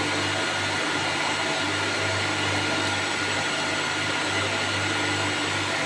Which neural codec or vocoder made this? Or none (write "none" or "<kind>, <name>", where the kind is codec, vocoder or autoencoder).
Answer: none